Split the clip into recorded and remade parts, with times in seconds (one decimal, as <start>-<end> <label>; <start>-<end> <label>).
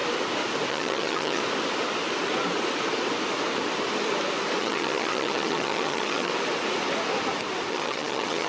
0.0-0.7 recorded; 0.7-1.4 remade; 1.4-4.6 recorded; 4.6-6.3 remade; 6.3-7.7 recorded; 7.7-8.5 remade